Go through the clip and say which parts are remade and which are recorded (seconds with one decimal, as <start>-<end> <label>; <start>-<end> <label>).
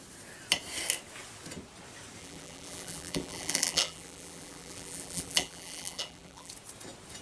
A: 0.0-2.2 recorded; 2.2-6.5 remade; 6.5-7.2 recorded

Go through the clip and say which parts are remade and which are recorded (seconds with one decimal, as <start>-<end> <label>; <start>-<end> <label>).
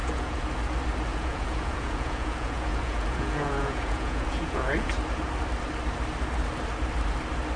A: 0.0-0.5 remade; 0.5-1.1 recorded; 1.1-4.9 remade; 4.9-7.6 recorded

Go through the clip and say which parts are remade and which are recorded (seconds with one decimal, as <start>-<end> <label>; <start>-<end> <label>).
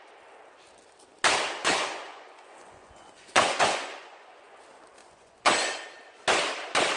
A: 0.0-1.6 recorded; 1.6-4.6 remade; 4.6-5.0 recorded; 5.0-5.7 remade; 5.7-7.0 recorded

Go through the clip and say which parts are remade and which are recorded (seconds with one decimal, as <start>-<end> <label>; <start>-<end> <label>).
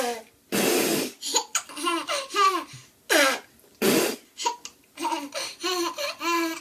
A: 0.0-6.6 recorded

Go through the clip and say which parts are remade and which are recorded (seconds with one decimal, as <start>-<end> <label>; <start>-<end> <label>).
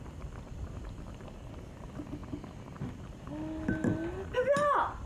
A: 0.0-5.1 recorded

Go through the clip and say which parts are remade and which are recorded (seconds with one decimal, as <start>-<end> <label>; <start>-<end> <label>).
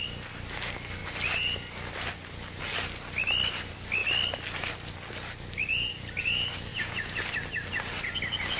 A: 0.0-6.7 recorded; 6.7-7.2 remade; 7.2-8.6 recorded